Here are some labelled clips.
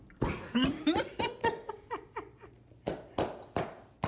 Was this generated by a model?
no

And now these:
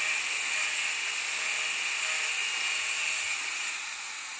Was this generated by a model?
no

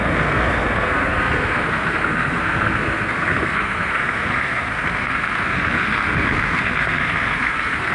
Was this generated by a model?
yes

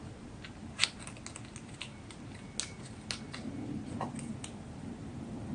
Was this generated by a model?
no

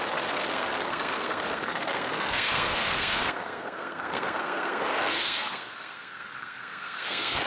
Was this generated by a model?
yes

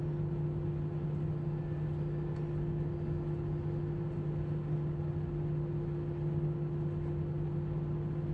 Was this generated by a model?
no